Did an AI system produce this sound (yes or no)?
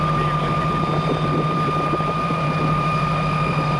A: yes